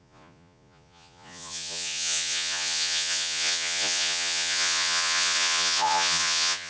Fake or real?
fake